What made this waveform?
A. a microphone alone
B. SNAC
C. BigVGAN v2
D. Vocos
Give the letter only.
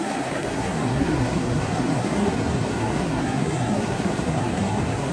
B